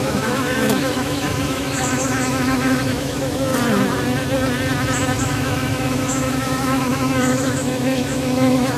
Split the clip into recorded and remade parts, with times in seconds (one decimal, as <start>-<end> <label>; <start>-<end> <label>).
0.0-3.5 remade; 3.5-5.2 recorded; 5.2-8.8 remade